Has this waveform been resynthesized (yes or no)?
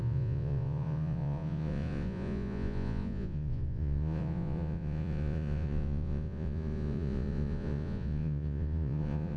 yes